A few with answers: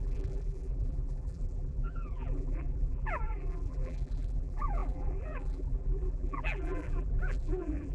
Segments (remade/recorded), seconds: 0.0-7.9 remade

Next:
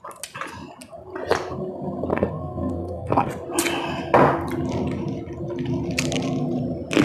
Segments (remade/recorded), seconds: 0.0-2.1 recorded; 2.1-3.3 remade; 3.3-7.0 recorded

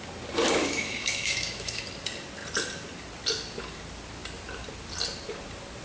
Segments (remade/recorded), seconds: 0.0-0.6 recorded; 0.6-1.8 remade; 1.8-5.8 recorded

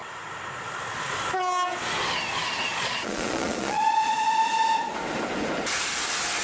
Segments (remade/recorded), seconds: 0.0-2.7 recorded; 2.7-4.2 remade; 4.2-6.4 recorded

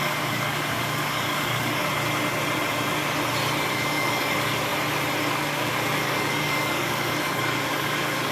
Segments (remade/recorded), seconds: 0.0-1.8 remade; 1.8-3.7 recorded; 3.7-4.7 remade; 4.7-5.2 recorded; 5.2-8.3 remade